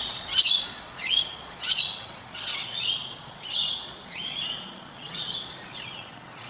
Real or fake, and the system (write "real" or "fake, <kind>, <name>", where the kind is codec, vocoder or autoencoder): fake, vocoder, Vocos